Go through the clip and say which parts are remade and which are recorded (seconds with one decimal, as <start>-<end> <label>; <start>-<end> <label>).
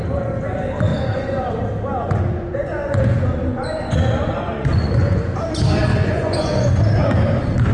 0.0-0.9 recorded; 0.9-1.5 remade; 1.5-1.9 recorded; 1.9-5.4 remade; 5.4-5.9 recorded; 5.9-6.8 remade; 6.8-7.7 recorded